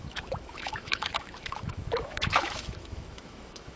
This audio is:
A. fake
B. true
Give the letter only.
A